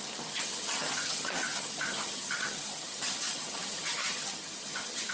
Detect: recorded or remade remade